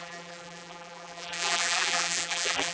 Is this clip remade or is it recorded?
remade